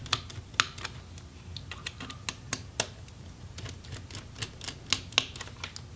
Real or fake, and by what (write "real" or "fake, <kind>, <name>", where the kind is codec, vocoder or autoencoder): real